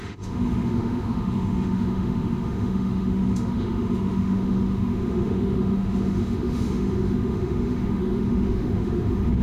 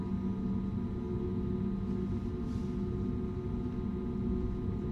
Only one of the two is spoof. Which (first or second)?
first